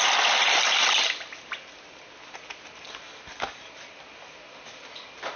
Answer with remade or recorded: recorded